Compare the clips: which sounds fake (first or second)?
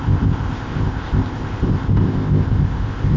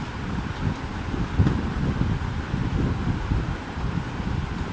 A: first